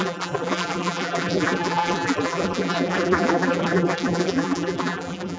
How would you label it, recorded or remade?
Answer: remade